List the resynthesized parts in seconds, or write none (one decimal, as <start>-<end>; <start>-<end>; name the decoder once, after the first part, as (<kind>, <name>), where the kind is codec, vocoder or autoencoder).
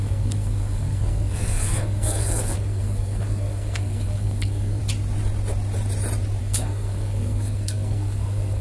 0.0-4.8 (codec, SNAC); 6.4-8.6